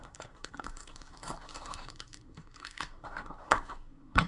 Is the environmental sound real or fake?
fake